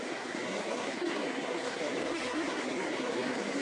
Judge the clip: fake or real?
fake